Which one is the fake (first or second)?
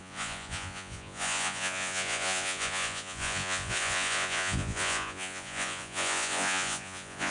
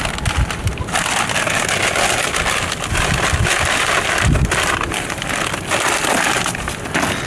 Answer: first